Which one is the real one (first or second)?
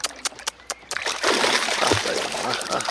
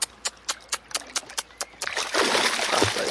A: second